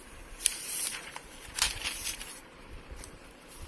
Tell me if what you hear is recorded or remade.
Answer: remade